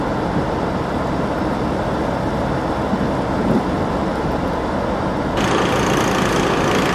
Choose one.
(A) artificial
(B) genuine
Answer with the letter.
B